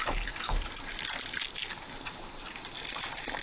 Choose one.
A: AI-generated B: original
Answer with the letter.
B